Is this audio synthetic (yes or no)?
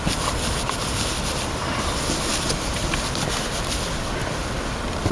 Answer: no